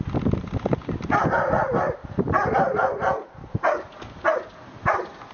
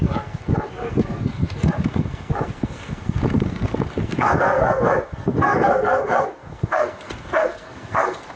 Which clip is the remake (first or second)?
second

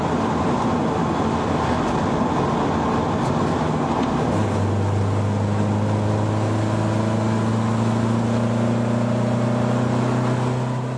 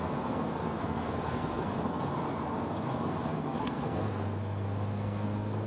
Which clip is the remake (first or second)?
second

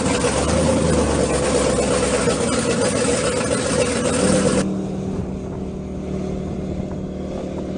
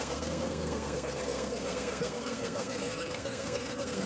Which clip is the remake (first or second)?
second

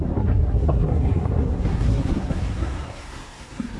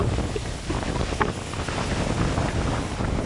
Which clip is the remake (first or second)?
first